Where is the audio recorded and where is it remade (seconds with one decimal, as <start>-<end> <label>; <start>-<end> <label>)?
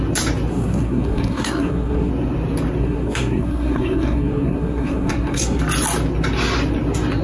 0.0-0.5 recorded; 0.5-2.1 remade; 2.1-2.8 recorded; 2.8-5.6 remade; 5.6-7.2 recorded